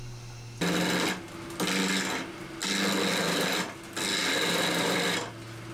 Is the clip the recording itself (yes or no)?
yes